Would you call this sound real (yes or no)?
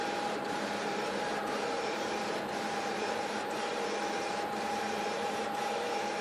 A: no